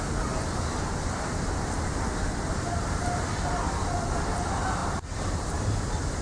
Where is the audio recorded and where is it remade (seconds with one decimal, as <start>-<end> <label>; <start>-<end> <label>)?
0.0-4.8 recorded; 4.8-6.2 remade